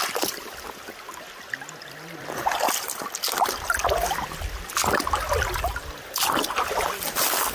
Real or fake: real